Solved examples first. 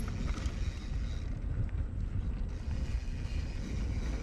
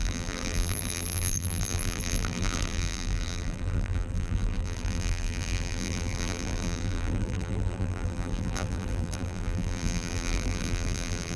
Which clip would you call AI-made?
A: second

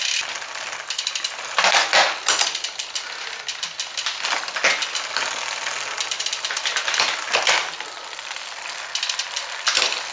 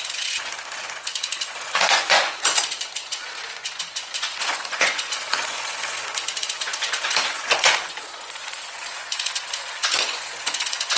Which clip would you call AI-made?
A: second